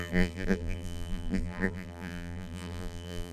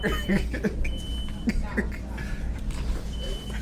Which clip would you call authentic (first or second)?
second